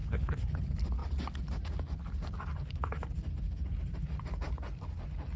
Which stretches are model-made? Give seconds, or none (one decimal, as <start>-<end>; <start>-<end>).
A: 0.0-0.5